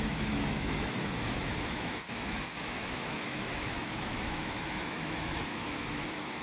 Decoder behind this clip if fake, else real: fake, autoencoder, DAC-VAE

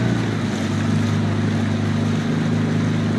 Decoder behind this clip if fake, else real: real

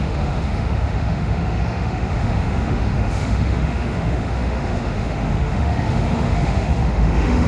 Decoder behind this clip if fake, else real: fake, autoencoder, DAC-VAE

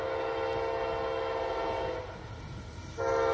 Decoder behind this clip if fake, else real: real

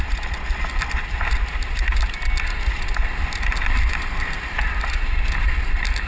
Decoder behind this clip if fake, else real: real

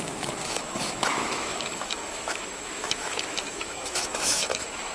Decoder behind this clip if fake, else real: fake, autoencoder, DAC-VAE